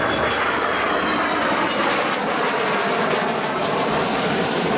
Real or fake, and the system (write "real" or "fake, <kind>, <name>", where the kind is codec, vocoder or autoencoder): real